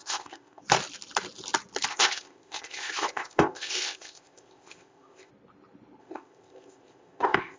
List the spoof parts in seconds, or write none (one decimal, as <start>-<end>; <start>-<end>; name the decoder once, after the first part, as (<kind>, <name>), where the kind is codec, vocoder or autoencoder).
0.0-0.6 (codec, ZipCodec); 1.9-5.3; 6.0-7.6